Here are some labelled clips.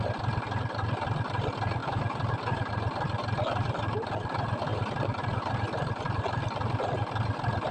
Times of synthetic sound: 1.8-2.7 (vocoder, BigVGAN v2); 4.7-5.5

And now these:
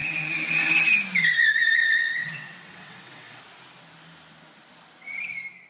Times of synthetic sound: 0.0-0.7 (vocoder, WaveNeXt); 1.8-3.4

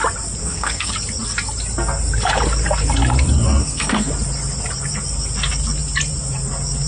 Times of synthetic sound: 0.4-0.9 (codec, SNAC); 3.6-4.1

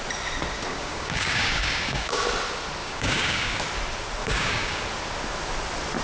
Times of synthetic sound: 0.7-2.2 (codec, DAC); 2.8-3.6; 4.2-4.8

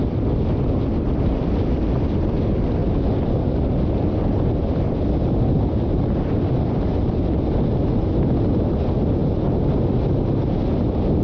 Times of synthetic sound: 0.0-1.3 (vocoder, BigVGAN v2); 2.8-6.8